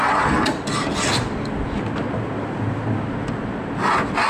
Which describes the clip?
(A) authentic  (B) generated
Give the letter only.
A